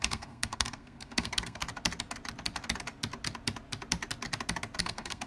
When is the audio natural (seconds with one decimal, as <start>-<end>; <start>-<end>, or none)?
1.6-4.8